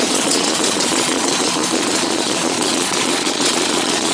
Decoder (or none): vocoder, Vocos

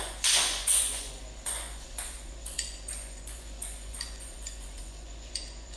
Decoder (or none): vocoder, Vocos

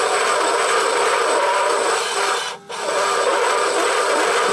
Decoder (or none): none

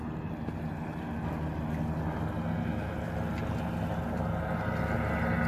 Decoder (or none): none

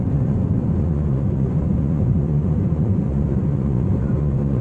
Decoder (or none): vocoder, Vocos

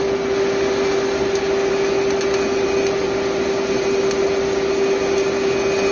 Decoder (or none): none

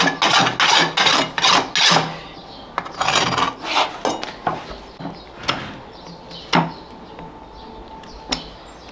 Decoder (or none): none